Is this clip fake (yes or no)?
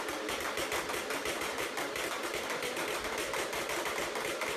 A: no